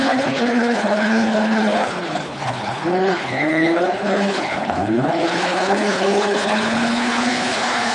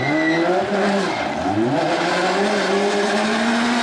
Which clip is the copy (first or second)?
first